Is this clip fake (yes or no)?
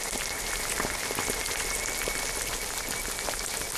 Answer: no